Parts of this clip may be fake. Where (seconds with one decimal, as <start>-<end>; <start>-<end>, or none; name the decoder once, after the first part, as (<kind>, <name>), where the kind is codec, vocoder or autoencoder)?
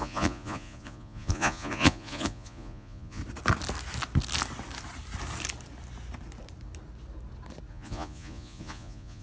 0.0-3.2 (vocoder, Vocos); 7.7-9.2